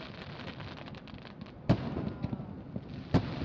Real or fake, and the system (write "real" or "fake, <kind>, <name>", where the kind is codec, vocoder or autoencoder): real